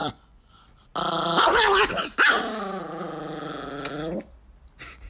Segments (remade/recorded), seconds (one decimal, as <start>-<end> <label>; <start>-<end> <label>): 0.0-0.5 remade; 0.5-5.1 recorded